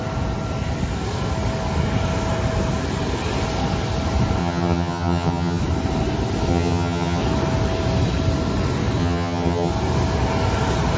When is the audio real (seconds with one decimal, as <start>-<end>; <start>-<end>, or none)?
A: 0.0-4.4; 5.6-6.5; 7.2-9.0; 9.7-11.0

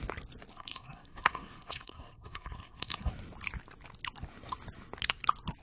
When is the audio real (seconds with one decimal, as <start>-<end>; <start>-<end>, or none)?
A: 0.0-0.5; 3.1-5.6

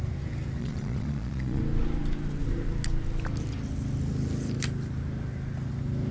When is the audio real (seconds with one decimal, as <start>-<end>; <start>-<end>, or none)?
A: 0.0-0.6; 1.6-6.1